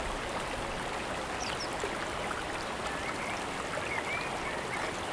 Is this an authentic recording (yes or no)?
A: yes